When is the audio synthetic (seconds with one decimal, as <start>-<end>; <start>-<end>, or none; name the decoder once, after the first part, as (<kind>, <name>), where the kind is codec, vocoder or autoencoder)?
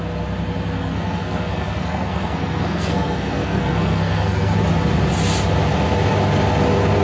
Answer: 0.8-4.6 (codec, SNAC)